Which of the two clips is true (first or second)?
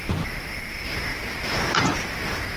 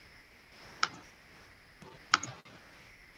first